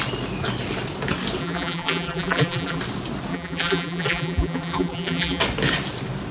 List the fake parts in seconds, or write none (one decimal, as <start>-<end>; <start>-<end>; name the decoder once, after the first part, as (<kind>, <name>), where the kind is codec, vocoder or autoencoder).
1.4-2.8 (vocoder, BigVGAN v2); 3.3-5.4